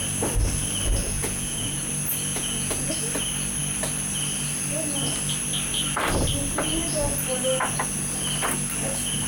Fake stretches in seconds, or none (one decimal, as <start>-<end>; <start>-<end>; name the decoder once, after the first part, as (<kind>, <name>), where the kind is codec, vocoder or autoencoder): 1.0-1.9 (vocoder, Vocos); 2.3-2.9